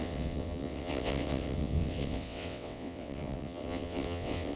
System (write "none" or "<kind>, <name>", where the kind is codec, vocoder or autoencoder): vocoder, WaveNeXt